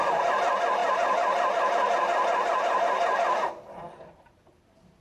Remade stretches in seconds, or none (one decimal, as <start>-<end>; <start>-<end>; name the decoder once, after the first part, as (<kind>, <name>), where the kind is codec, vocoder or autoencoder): none